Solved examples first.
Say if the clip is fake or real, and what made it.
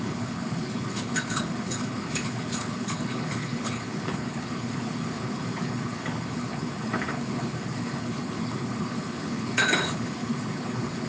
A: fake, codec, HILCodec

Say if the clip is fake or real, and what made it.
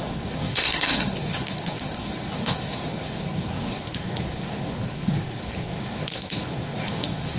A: fake, codec, SNAC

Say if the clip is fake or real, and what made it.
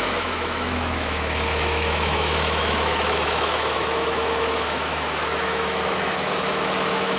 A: fake, autoencoder, DAC-VAE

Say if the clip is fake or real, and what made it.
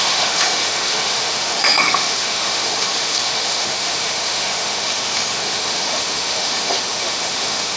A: fake, autoencoder, DAC-VAE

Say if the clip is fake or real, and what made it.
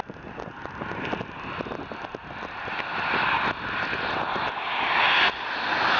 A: real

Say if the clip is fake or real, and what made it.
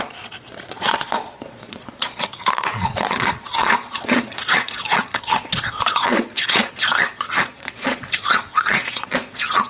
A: fake, vocoder, Vocos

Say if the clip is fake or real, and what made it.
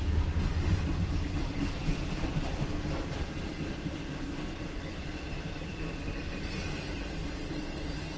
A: real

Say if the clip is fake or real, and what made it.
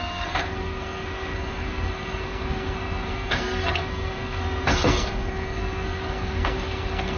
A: fake, codec, SNAC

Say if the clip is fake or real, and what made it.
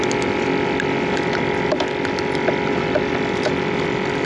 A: real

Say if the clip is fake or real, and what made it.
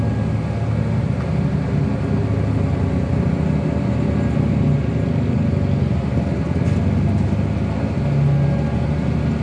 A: real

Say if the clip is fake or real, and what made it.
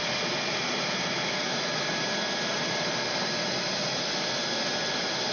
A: real